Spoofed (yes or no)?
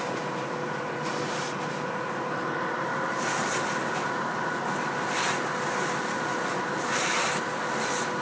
no